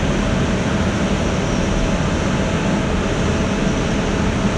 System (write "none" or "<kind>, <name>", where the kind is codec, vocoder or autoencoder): none